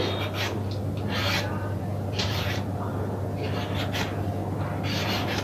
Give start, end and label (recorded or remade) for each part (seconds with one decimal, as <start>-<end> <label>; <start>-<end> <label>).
0.0-5.4 recorded